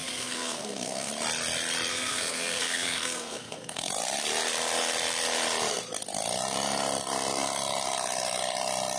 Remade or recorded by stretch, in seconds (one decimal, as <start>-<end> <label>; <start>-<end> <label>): 0.0-1.1 remade; 1.1-1.9 recorded; 1.9-3.9 remade; 3.9-9.0 recorded